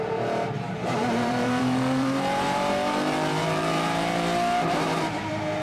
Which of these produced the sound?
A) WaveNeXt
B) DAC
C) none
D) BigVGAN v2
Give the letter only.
D